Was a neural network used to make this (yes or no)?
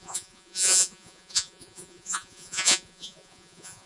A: yes